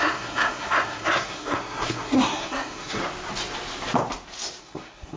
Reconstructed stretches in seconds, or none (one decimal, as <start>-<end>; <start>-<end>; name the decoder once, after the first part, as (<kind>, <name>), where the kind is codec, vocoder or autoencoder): 0.0-3.0 (codec, SNAC); 4.6-5.2